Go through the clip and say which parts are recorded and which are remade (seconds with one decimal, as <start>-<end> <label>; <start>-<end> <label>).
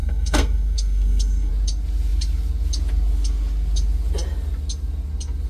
0.0-1.5 remade; 1.5-5.5 recorded